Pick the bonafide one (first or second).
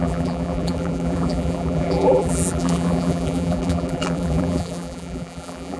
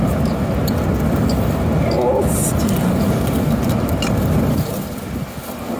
second